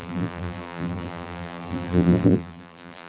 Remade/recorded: remade